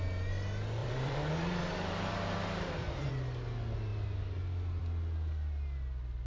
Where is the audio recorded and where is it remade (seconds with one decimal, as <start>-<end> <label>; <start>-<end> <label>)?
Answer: 0.0-0.8 recorded; 0.8-3.1 remade; 3.1-6.3 recorded